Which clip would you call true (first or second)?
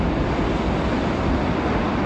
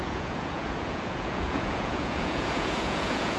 first